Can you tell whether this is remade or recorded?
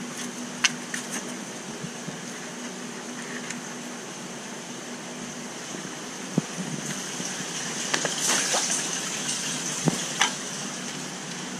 recorded